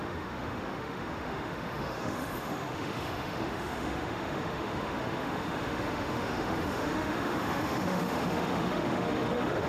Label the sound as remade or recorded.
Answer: remade